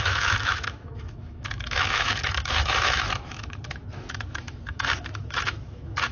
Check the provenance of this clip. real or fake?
fake